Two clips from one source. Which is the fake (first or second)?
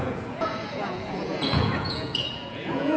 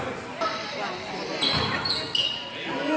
first